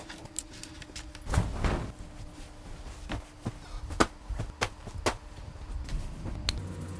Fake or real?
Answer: real